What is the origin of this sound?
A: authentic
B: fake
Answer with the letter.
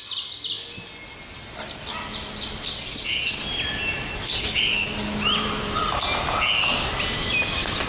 A